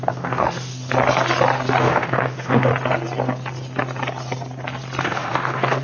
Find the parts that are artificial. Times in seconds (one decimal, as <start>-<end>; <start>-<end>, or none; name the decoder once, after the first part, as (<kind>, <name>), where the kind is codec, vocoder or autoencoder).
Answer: 0.0-0.7 (autoencoder, DAC-VAE); 1.8-2.7; 5.0-5.8

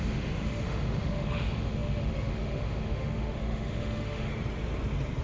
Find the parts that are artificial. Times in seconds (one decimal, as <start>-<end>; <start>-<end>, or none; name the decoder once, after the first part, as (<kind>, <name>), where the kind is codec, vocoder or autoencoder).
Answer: 0.0-4.3 (autoencoder, DAC-VAE)

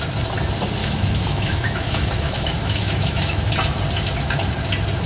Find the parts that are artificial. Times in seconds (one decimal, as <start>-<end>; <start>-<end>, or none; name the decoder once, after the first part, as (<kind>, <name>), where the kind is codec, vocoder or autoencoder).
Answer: 0.8-3.5 (autoencoder, DAC-VAE)

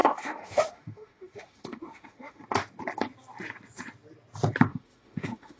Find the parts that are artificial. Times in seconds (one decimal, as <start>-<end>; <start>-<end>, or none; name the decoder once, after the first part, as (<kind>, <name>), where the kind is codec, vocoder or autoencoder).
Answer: 0.0-2.4 (autoencoder, DAC-VAE); 4.7-5.6